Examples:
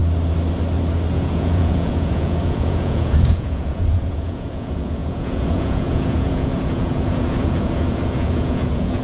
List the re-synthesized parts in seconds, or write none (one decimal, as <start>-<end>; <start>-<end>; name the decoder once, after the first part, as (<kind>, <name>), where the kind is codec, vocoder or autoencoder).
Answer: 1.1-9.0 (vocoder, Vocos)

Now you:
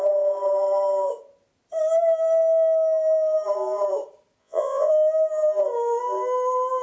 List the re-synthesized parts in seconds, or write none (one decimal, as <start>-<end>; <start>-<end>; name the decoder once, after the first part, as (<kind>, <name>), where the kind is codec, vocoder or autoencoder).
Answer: 4.4-4.9 (vocoder, Vocos)

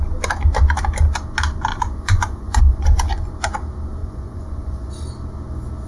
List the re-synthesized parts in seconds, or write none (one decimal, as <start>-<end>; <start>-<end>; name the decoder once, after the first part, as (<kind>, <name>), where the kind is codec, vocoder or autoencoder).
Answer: 1.7-3.3 (vocoder, Vocos); 4.0-4.9

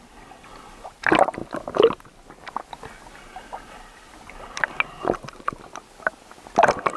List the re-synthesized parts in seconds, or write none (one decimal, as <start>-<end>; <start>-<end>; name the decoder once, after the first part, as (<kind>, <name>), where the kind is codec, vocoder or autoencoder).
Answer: none

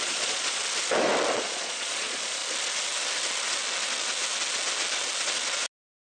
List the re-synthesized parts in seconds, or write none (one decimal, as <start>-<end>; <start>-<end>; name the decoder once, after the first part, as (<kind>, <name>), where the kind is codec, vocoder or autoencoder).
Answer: 0.0-0.6 (vocoder, Vocos); 1.3-2.4

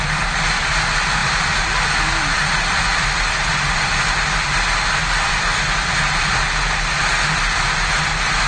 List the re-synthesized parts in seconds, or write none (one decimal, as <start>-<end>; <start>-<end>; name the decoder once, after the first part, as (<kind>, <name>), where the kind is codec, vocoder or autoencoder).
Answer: none

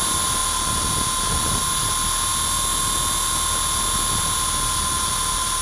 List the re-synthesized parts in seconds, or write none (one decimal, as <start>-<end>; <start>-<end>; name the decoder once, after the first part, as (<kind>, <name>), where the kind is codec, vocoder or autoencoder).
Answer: none